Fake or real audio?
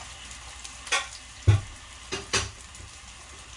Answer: real